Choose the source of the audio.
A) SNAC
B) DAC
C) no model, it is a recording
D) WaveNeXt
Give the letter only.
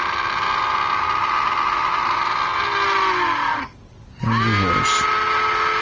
C